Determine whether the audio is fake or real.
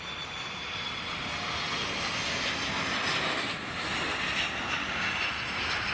real